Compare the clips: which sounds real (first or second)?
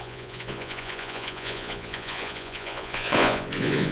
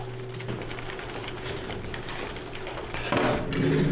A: second